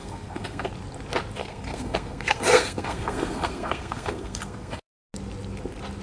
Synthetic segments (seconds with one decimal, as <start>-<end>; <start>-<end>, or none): 0.0-0.7; 1.4-5.0